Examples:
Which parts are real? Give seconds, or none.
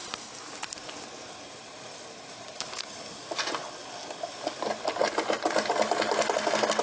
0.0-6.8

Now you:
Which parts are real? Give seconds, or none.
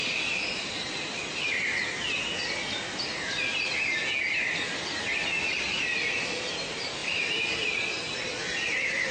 0.0-7.0; 7.8-9.1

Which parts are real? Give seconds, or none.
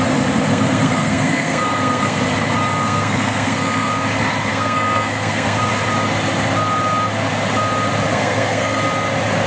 0.0-0.5; 2.2-2.8; 3.9-4.5; 5.7-8.1; 8.8-9.5